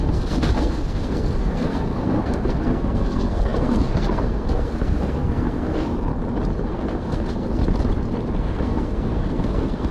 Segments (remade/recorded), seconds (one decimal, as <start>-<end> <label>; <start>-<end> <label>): 0.0-6.1 remade; 6.1-6.6 recorded; 6.6-7.6 remade; 7.6-8.4 recorded; 8.4-9.9 remade